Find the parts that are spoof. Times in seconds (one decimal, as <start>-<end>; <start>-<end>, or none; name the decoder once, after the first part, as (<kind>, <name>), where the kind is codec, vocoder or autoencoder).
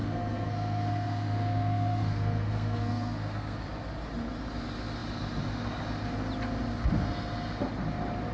0.0-3.6 (codec, SNAC)